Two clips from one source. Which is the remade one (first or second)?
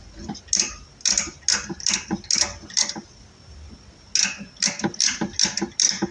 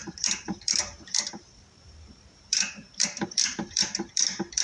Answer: second